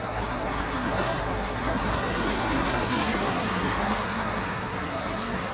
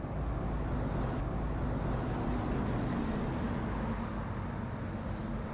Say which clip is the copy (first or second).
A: first